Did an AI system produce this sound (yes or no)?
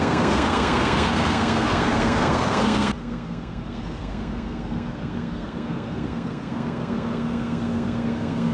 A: yes